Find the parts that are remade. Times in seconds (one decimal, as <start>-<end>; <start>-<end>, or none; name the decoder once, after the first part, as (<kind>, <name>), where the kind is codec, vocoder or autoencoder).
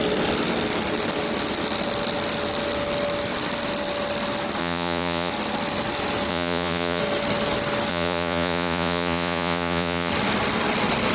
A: 4.6-5.3 (vocoder, Vocos); 6.3-7.0; 7.9-10.1